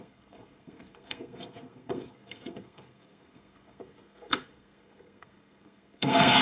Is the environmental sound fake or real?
fake